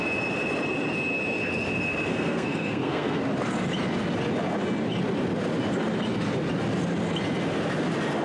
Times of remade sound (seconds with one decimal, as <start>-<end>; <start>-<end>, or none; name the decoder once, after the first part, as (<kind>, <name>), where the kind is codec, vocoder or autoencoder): 2.1-3.2 (codec, SNAC)